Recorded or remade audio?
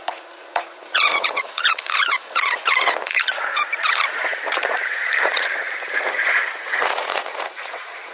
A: remade